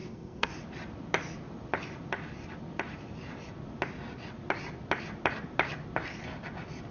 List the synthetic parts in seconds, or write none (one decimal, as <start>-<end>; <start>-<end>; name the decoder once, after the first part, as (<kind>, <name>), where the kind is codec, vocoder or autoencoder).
0.0-0.5 (codec, SNAC)